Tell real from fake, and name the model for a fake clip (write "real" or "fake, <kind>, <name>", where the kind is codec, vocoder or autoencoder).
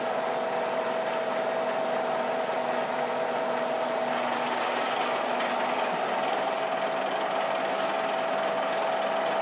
real